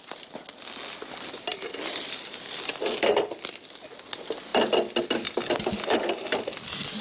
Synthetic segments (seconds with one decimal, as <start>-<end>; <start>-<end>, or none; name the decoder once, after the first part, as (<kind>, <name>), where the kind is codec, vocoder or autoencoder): none